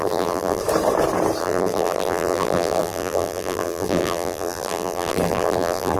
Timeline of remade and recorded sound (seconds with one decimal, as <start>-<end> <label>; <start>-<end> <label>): 0.0-0.6 remade; 0.6-1.4 recorded; 1.4-6.0 remade